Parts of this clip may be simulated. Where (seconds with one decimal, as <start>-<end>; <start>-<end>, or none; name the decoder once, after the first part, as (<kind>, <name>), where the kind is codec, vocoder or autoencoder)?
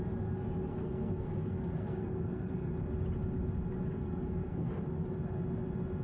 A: 0.7-2.7 (codec, SNAC); 4.0-4.7